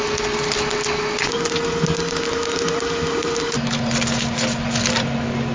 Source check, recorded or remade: recorded